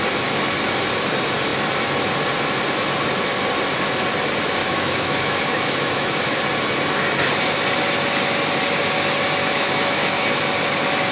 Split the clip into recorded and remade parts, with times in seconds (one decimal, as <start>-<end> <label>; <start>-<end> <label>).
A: 0.0-4.6 recorded; 4.6-6.4 remade; 6.4-9.4 recorded; 9.4-10.4 remade; 10.4-11.1 recorded